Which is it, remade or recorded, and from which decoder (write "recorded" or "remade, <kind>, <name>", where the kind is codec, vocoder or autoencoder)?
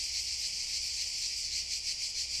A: recorded